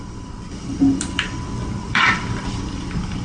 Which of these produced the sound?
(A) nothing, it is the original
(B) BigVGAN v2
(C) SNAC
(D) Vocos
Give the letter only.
B